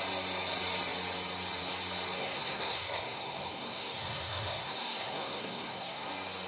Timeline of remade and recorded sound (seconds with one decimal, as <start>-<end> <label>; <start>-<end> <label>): 0.0-2.2 recorded; 2.2-6.1 remade; 6.1-6.5 recorded